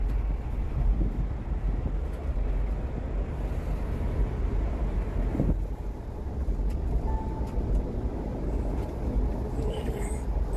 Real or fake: real